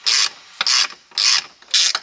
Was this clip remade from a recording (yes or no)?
no